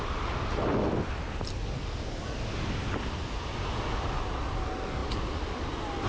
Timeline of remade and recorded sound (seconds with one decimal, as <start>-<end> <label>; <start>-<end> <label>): 0.0-6.1 recorded